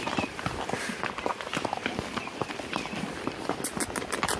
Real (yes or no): yes